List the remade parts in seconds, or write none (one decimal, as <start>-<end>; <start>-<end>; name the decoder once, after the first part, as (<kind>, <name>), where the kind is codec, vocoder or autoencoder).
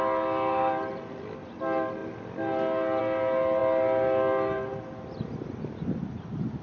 none